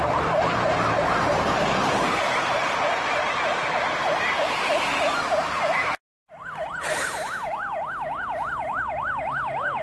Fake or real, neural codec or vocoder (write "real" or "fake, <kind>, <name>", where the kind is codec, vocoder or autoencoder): real